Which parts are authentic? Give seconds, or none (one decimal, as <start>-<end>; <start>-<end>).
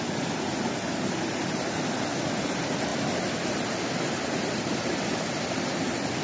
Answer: 0.0-6.2